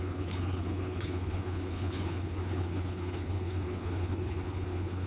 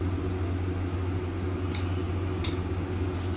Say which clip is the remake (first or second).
first